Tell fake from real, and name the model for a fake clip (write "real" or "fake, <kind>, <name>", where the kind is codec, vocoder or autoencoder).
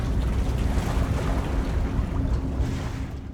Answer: real